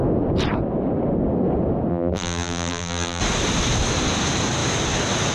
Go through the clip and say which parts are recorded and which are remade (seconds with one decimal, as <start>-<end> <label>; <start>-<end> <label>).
0.0-1.9 recorded; 1.9-3.2 remade; 3.2-5.3 recorded